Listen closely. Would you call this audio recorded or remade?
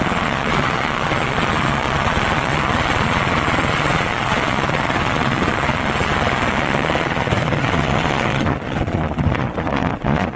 remade